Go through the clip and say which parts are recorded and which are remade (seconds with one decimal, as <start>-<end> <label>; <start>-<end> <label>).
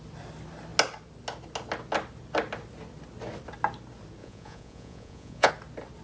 0.0-4.2 recorded; 4.2-5.5 remade; 5.5-6.0 recorded